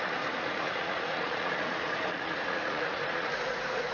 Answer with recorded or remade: remade